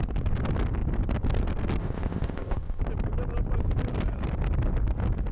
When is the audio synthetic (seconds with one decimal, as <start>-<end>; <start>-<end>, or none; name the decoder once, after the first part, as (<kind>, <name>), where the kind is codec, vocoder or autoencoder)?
1.8-2.8 (codec, ZipCodec)